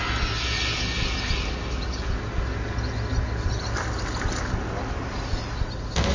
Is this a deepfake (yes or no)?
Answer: no